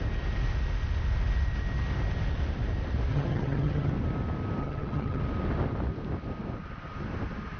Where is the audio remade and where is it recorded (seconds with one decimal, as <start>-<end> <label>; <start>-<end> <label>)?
0.0-3.1 recorded; 3.1-3.9 remade; 3.9-4.6 recorded; 4.6-5.2 remade; 5.2-7.6 recorded